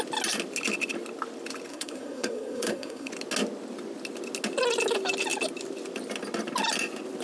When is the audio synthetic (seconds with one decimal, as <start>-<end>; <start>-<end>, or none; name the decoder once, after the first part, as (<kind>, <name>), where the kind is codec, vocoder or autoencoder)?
1.7-3.1 (codec, SNAC)